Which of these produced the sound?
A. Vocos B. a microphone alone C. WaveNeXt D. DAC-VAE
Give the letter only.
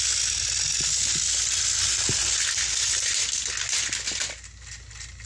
B